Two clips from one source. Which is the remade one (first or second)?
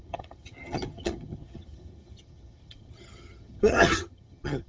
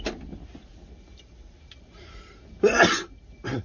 first